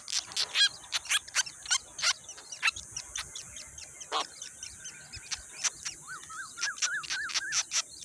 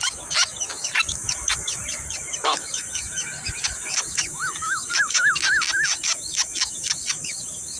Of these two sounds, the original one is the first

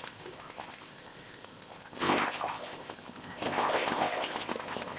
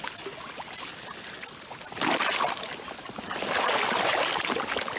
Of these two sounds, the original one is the second